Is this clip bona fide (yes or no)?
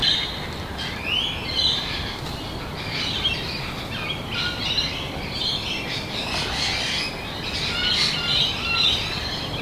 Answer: yes